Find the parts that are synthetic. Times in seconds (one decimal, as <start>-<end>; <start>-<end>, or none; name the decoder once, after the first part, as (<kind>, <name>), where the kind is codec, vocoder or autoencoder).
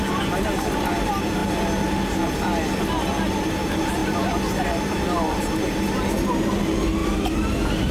none